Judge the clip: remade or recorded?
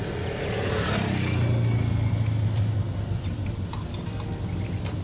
recorded